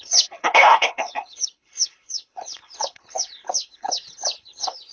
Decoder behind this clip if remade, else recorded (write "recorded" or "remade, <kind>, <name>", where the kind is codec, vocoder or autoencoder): remade, codec, HILCodec